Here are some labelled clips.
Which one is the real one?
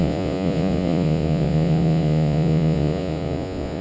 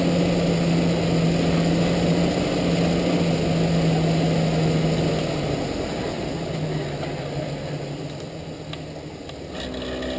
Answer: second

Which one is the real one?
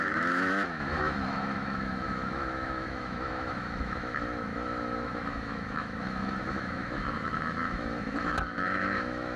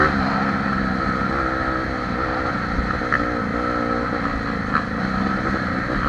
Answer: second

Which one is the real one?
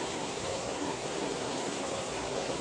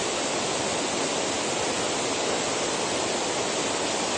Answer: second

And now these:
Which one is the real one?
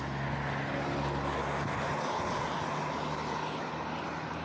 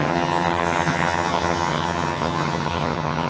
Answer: first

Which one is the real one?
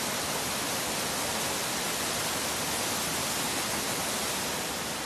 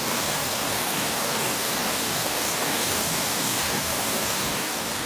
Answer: first